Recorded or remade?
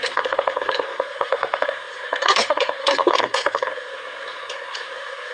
remade